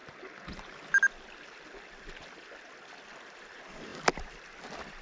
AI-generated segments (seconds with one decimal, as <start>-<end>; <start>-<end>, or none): none